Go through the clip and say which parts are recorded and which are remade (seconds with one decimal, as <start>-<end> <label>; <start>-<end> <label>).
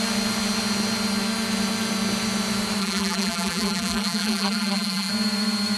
0.0-2.8 recorded; 2.8-5.1 remade; 5.1-5.8 recorded